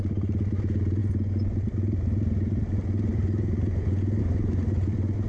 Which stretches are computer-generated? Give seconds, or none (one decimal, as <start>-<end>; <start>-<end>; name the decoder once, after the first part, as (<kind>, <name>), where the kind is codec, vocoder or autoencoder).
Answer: none